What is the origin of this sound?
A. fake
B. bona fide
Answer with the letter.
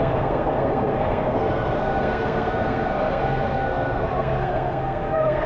A